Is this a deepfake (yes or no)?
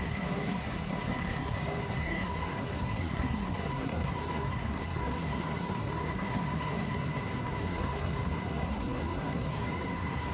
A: yes